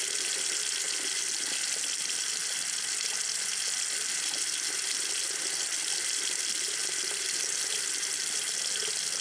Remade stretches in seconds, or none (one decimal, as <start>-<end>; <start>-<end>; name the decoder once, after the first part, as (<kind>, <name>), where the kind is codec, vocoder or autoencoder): none